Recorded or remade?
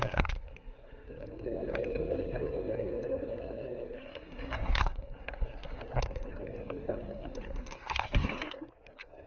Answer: remade